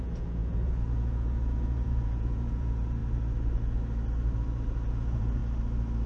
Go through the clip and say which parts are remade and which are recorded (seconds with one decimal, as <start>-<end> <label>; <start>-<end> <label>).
0.0-3.0 remade; 3.0-4.9 recorded; 4.9-5.4 remade; 5.4-6.1 recorded